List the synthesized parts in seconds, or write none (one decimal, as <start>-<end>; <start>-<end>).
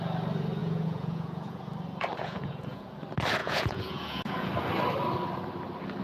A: 0.6-1.7; 2.2-2.9; 3.4-4.5